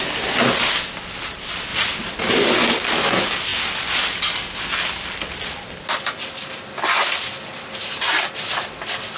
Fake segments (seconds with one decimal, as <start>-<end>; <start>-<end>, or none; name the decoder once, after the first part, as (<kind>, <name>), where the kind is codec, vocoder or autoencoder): none